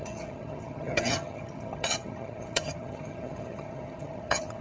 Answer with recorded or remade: remade